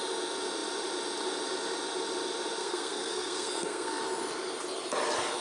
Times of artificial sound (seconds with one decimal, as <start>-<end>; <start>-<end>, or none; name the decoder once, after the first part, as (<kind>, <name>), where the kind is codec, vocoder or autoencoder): 2.6-4.0 (codec, SNAC)